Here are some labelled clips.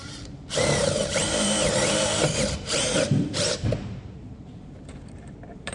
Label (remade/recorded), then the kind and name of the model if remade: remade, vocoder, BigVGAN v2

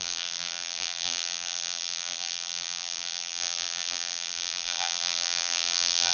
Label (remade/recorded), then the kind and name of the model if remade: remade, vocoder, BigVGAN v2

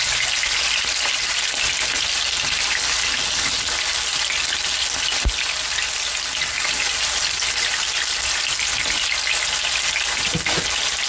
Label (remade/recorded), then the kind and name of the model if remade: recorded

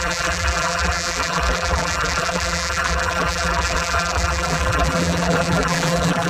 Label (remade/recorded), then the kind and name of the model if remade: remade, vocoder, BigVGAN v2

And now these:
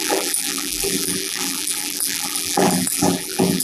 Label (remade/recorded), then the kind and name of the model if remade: remade, vocoder, BigVGAN v2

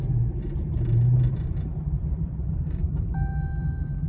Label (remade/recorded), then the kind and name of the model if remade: remade, vocoder, BigVGAN v2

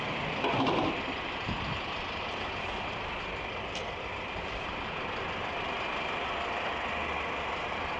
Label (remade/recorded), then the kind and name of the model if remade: remade, vocoder, BigVGAN v2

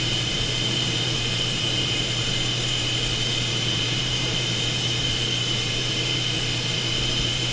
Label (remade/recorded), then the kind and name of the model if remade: remade, vocoder, BigVGAN v2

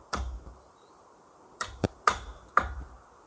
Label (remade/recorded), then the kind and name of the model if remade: remade, vocoder, BigVGAN v2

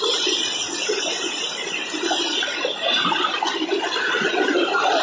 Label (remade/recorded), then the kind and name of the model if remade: recorded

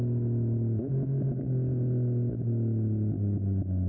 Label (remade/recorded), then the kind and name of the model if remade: recorded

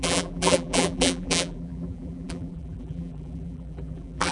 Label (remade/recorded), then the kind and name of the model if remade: remade, vocoder, BigVGAN v2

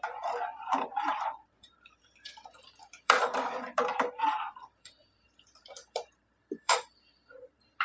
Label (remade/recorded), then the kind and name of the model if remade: remade, vocoder, BigVGAN v2